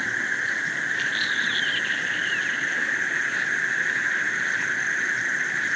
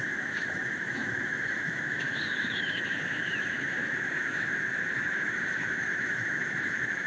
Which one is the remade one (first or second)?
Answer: second